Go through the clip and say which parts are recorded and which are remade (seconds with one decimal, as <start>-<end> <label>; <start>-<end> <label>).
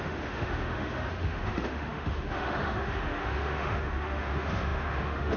0.0-5.4 remade